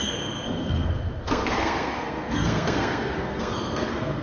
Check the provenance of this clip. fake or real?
fake